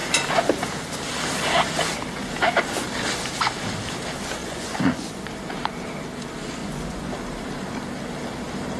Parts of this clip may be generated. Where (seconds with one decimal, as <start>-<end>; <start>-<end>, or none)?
4.4-5.3; 6.6-7.1